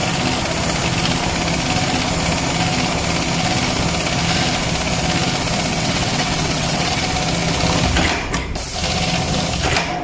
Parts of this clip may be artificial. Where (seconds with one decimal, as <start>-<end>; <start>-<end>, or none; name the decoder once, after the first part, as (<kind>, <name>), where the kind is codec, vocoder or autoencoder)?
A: 5.7-7.0 (vocoder, WaveNeXt)